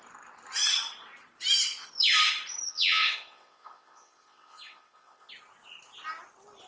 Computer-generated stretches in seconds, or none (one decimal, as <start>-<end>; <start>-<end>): 2.7-5.3